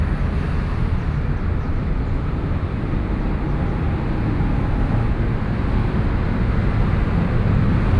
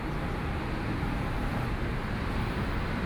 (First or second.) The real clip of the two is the first